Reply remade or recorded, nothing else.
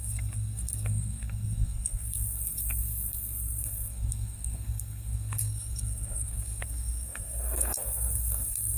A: remade